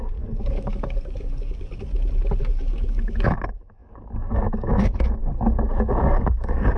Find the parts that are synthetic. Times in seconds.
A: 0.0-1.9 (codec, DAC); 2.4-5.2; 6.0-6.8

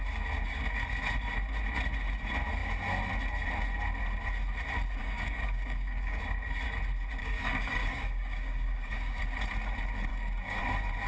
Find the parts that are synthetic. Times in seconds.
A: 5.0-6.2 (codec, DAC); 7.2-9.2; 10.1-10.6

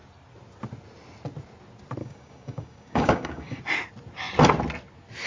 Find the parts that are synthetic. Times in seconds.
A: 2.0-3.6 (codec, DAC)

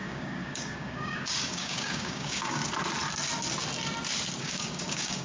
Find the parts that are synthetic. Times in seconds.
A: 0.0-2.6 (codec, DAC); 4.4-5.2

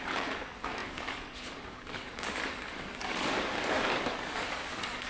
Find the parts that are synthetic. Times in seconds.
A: 0.0-5.1 (codec, DAC)

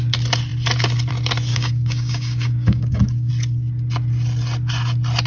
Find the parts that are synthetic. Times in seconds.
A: 1.5-3.3 (codec, DAC)

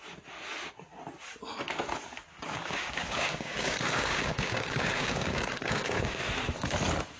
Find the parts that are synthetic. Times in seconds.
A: 2.3-6.2 (codec, DAC)